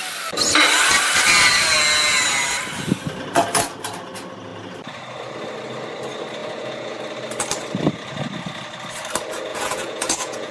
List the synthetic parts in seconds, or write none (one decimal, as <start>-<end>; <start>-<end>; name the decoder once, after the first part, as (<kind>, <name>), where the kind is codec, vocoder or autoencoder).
6.4-7.0 (vocoder, Vocos); 9.5-10.5